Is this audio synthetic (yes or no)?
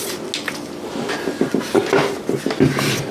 no